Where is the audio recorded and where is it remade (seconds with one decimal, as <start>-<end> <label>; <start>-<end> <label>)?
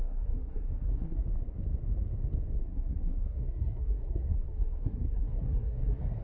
0.0-1.2 remade; 1.2-2.6 recorded; 2.6-6.2 remade